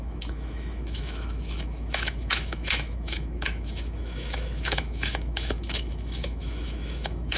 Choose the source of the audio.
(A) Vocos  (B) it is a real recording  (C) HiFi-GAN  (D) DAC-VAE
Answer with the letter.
D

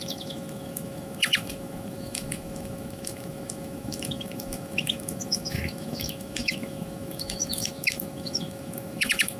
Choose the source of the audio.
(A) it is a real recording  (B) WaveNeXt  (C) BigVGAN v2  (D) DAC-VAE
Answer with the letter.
D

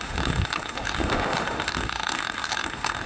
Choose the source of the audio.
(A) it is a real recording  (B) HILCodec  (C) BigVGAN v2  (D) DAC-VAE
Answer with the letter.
D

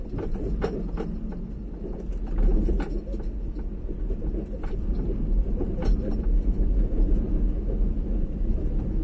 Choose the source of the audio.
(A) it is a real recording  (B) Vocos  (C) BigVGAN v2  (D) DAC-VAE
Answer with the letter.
A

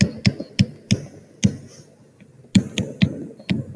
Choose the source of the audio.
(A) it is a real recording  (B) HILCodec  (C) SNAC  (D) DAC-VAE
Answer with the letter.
A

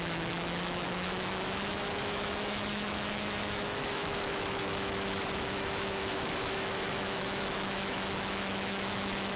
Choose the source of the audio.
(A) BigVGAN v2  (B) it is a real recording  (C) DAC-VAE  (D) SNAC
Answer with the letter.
C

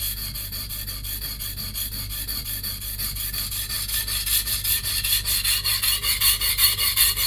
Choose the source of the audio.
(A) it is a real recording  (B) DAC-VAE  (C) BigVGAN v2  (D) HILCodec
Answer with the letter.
A